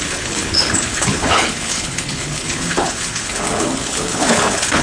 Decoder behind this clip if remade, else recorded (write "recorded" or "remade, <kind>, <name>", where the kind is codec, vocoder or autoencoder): remade, codec, HILCodec